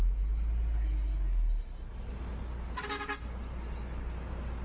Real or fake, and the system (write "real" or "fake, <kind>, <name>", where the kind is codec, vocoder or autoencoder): real